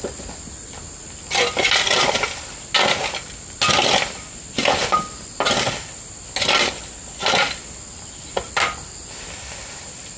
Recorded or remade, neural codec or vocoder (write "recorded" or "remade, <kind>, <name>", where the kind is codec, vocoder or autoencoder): recorded